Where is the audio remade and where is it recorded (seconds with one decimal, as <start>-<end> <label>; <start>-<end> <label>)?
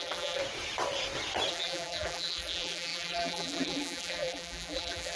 0.0-0.4 remade; 0.4-1.5 recorded; 1.5-5.2 remade